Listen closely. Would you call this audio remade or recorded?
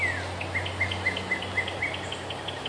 recorded